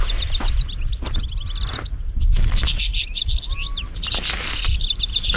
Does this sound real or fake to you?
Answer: real